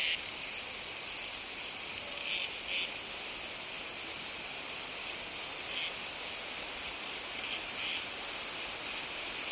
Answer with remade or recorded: recorded